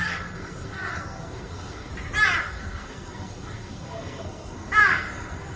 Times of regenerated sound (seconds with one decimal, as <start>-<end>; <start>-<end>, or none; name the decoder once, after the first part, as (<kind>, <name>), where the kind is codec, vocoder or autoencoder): 0.0-1.9 (codec, SNAC); 2.5-5.6